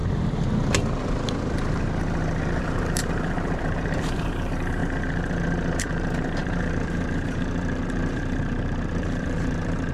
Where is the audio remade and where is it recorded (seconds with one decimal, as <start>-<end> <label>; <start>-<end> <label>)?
0.0-2.6 recorded; 2.6-4.8 remade; 4.8-5.8 recorded; 5.8-9.9 remade